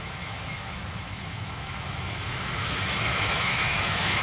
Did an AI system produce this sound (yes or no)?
yes